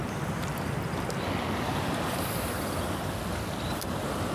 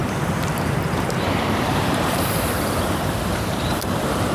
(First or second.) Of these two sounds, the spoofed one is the second